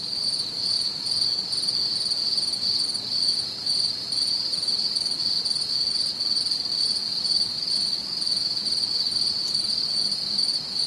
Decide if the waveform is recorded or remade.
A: recorded